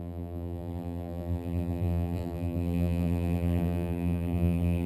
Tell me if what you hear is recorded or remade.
remade